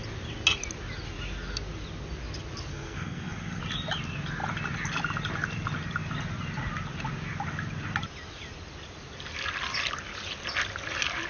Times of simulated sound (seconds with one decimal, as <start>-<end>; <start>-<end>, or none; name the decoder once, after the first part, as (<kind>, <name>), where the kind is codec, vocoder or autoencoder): 2.7-3.6 (codec, SNAC)